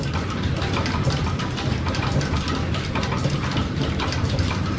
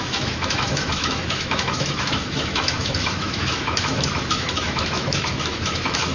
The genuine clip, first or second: first